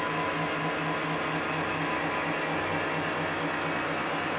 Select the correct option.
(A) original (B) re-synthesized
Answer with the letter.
A